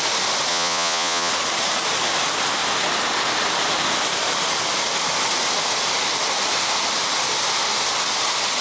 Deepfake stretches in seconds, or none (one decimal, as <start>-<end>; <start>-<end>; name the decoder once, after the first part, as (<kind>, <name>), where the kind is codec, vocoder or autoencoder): 0.5-1.3 (vocoder, Vocos)